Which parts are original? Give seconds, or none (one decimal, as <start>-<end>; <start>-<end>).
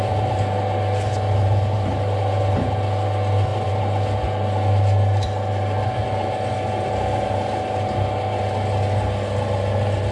0.0-10.1